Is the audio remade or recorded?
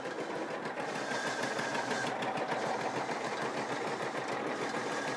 recorded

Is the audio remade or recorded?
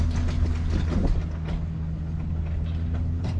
recorded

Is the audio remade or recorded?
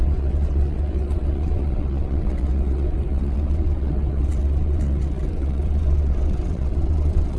remade